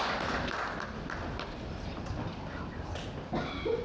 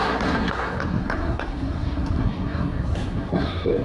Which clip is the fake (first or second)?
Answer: second